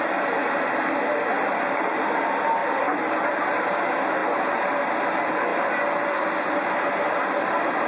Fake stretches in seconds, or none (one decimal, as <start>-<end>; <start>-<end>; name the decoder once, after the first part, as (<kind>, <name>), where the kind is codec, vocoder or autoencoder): none